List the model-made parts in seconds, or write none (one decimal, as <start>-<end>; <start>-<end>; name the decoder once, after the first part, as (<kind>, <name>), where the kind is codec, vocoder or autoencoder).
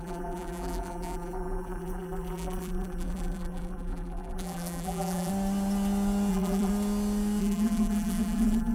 0.0-5.3 (vocoder, BigVGAN v2); 6.3-6.7; 7.4-8.7